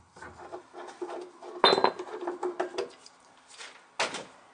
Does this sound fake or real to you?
real